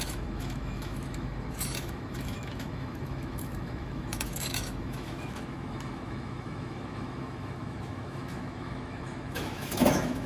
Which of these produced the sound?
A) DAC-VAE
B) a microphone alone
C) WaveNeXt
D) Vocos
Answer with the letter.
A